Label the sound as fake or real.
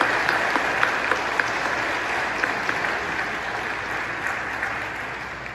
fake